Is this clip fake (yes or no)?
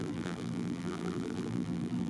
yes